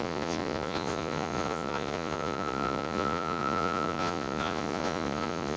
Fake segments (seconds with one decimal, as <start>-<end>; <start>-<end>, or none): 0.0-5.6